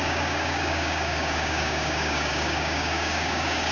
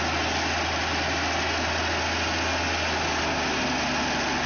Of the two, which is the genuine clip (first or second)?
second